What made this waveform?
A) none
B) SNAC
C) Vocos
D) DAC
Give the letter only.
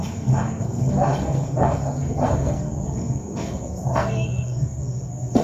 B